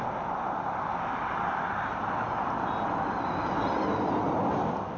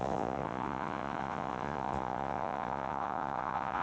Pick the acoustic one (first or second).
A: first